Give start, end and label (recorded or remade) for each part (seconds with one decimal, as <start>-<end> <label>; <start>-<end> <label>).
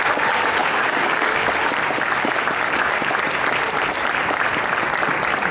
0.0-0.6 recorded; 0.6-1.5 remade; 1.5-5.5 recorded